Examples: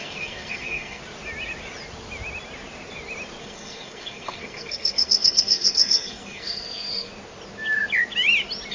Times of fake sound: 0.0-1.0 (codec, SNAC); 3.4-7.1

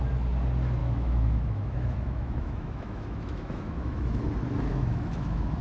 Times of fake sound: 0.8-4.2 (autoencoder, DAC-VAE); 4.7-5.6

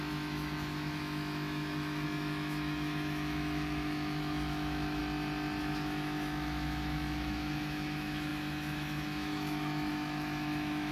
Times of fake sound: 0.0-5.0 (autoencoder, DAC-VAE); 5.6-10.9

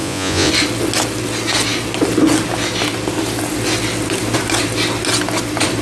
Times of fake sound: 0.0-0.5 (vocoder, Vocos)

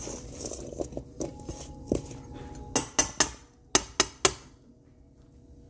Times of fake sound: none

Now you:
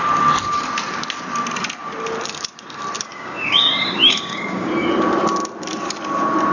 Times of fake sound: 3.1-4.7 (codec, DAC)

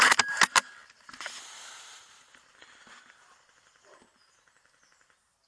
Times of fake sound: none

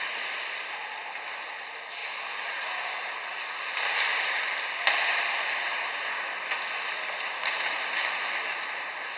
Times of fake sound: none